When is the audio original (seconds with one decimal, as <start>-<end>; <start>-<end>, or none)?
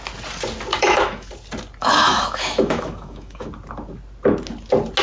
0.0-0.7; 1.3-1.8; 3.5-5.0